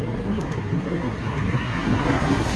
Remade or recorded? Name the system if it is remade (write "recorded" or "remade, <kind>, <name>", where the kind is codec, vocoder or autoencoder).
remade, codec, SNAC